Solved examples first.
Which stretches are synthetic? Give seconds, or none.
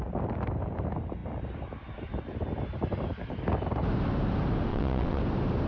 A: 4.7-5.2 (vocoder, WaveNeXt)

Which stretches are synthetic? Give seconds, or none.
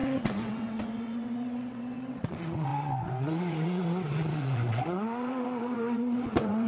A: 0.0-6.7 (vocoder, WaveNeXt)